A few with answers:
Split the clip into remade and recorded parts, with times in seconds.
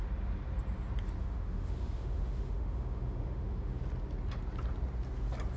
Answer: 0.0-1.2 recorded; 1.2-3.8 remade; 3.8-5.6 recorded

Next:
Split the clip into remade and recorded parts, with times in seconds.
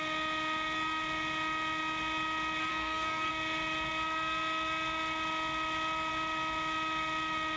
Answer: 0.0-2.7 recorded; 2.7-3.3 remade; 3.3-7.6 recorded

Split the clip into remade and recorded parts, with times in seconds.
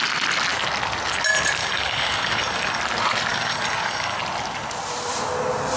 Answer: 0.0-1.6 recorded; 1.6-2.8 remade; 2.8-3.3 recorded; 3.3-4.2 remade; 4.2-5.8 recorded